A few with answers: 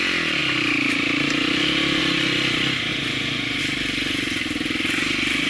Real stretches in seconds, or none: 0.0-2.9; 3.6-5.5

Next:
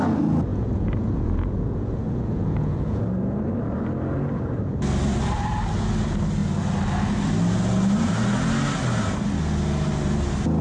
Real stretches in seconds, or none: 0.0-0.5; 3.0-10.6

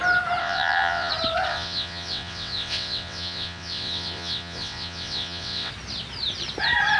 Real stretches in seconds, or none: 0.0-0.4; 1.1-1.5; 5.7-7.0